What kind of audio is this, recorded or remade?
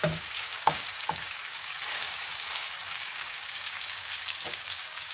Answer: remade